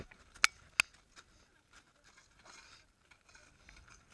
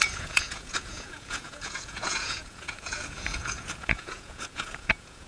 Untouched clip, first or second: first